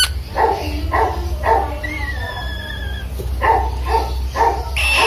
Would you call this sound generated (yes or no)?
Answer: no